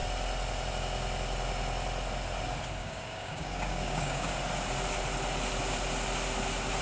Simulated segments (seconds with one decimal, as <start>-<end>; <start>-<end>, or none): 2.8-4.3